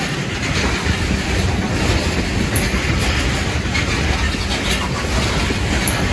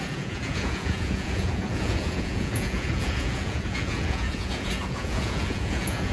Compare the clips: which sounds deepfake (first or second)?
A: second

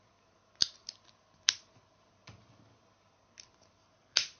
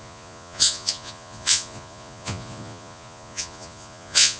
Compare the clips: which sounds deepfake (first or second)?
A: second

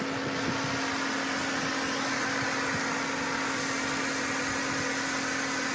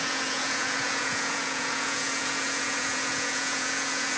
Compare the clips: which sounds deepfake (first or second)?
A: second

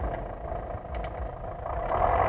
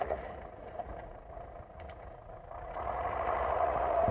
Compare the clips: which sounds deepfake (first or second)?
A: second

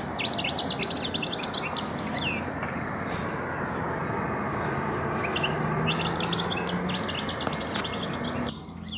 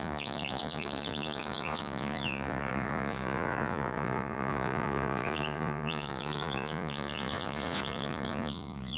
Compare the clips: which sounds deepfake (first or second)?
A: second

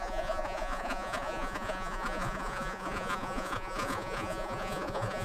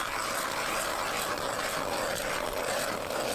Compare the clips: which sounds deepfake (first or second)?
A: first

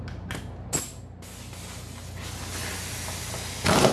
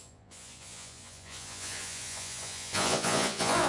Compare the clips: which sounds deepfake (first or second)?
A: second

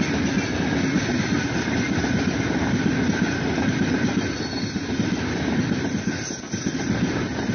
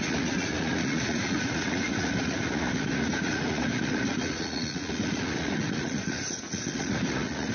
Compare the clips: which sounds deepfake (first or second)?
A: second